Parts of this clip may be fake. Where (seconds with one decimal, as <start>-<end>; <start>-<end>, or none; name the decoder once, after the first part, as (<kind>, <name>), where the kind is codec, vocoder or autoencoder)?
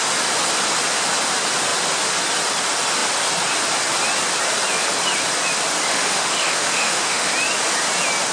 5.9-7.3 (autoencoder, DAC-VAE)